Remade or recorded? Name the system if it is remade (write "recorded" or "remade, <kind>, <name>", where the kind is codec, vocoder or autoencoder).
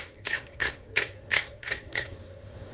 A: remade, codec, SNAC